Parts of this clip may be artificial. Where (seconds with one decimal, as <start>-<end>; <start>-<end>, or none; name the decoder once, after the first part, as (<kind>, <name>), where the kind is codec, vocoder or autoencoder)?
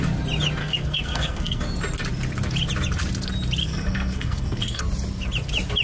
0.6-1.6 (codec, SNAC); 3.6-4.8